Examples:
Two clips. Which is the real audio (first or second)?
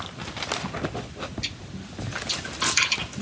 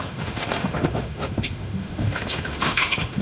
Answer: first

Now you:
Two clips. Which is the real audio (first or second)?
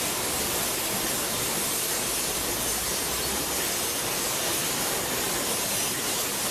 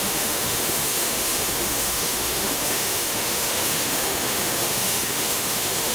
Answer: first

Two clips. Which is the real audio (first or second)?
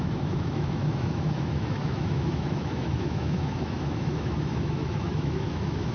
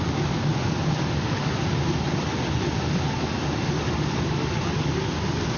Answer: second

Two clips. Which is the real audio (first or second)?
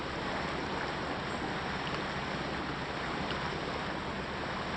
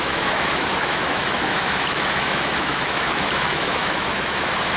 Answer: first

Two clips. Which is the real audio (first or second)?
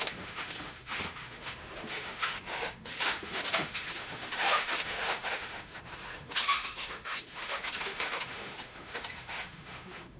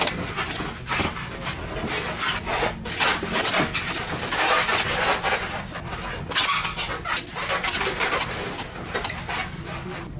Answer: second